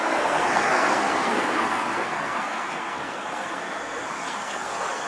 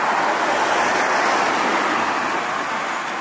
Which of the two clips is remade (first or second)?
first